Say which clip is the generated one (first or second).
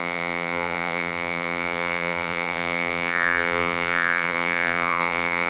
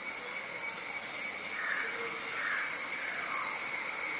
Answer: first